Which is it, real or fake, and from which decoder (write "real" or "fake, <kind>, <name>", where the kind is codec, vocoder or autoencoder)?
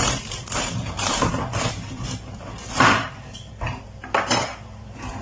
fake, vocoder, BigVGAN v2